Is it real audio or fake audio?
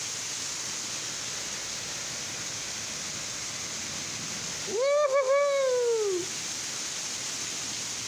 real